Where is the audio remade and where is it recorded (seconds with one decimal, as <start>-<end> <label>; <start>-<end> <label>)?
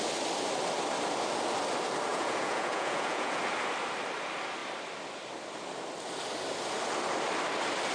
0.0-2.1 recorded; 2.1-3.4 remade; 3.4-7.9 recorded